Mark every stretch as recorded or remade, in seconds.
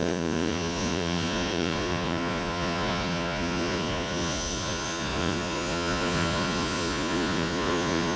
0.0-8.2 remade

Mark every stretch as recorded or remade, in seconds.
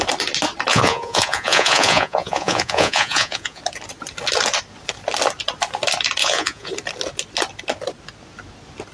0.0-0.7 recorded; 0.7-3.6 remade; 3.6-6.2 recorded; 6.2-6.7 remade; 6.7-8.9 recorded